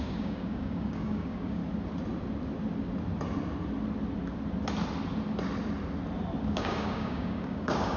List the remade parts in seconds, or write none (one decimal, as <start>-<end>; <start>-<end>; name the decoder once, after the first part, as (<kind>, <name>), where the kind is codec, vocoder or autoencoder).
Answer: 0.0-1.6 (codec, DAC); 6.4-8.0